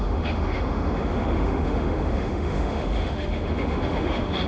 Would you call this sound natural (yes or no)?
no